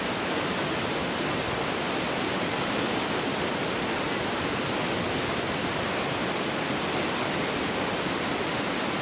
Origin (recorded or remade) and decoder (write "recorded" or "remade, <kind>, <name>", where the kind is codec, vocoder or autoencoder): recorded